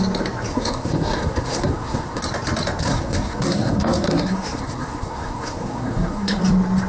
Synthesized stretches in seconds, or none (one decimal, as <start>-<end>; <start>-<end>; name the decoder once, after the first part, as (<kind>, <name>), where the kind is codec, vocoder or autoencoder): 0.5-2.2 (codec, SNAC); 2.8-6.4